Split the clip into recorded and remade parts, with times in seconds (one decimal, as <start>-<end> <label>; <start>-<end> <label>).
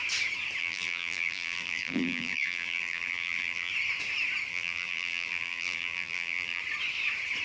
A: 0.0-0.6 recorded; 0.6-3.7 remade; 3.7-4.5 recorded; 4.5-6.6 remade; 6.6-7.4 recorded